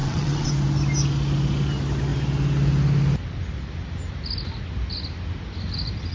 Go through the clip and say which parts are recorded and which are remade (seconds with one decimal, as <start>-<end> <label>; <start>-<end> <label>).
0.0-0.5 remade; 0.5-6.1 recorded